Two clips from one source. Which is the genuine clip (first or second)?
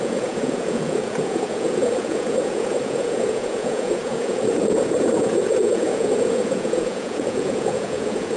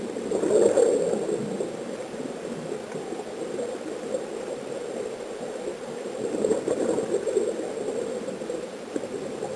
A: second